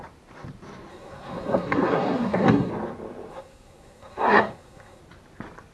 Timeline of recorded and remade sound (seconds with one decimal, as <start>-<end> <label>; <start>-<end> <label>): 0.0-0.9 recorded; 0.9-2.7 remade; 2.7-3.3 recorded; 3.3-5.0 remade; 5.0-5.7 recorded